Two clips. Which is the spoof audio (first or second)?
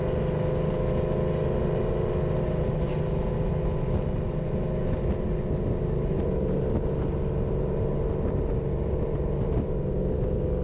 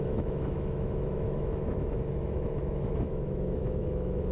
second